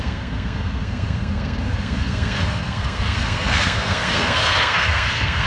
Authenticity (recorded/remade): remade